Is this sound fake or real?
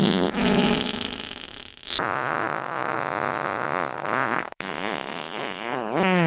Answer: fake